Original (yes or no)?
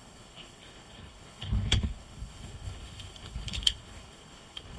no